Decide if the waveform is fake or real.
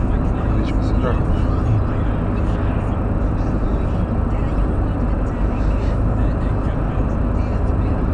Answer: real